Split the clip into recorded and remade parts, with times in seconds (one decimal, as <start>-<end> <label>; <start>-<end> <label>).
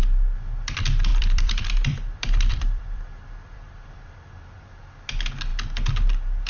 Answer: 0.0-1.1 recorded; 1.1-4.3 remade; 4.3-6.5 recorded